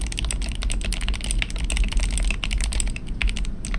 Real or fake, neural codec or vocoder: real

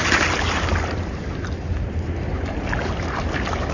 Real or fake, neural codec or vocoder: real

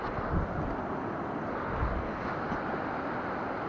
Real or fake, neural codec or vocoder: real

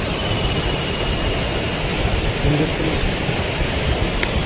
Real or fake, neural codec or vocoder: real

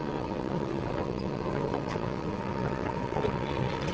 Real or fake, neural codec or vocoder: fake, vocoder, WaveNeXt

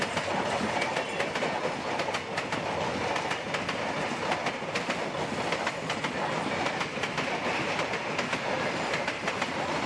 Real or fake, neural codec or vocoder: real